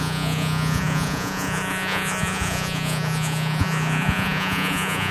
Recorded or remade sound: remade